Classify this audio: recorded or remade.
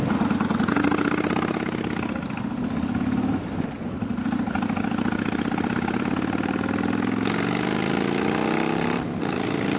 recorded